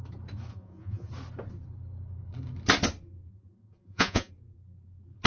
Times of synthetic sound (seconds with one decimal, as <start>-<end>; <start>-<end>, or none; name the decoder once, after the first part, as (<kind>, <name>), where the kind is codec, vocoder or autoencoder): 0.5-1.1 (vocoder, Vocos); 3.3-4.3